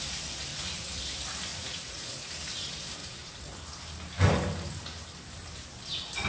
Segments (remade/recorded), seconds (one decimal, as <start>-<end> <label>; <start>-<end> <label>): 0.0-0.5 recorded; 0.5-1.0 remade; 1.0-1.5 recorded; 1.5-2.3 remade; 2.3-3.0 recorded; 3.0-3.6 remade; 3.6-6.3 recorded